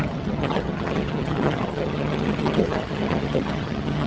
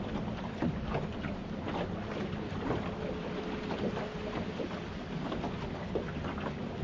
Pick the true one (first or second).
second